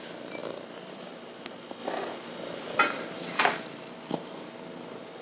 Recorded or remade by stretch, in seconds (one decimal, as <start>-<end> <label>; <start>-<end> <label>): 0.0-0.4 recorded; 0.4-1.3 remade; 1.3-1.8 recorded; 1.8-3.4 remade; 3.4-5.2 recorded